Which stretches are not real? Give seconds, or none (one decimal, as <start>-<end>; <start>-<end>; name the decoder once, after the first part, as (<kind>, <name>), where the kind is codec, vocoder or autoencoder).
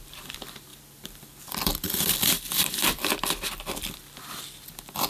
0.0-5.1 (vocoder, BigVGAN v2)